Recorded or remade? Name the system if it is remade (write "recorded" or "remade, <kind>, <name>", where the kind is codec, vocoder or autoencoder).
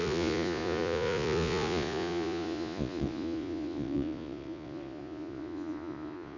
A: remade, vocoder, Vocos